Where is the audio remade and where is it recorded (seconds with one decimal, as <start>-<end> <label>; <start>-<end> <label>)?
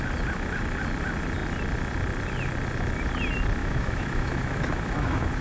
0.0-3.6 recorded; 3.6-5.4 remade